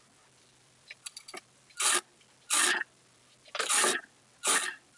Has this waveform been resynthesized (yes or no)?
no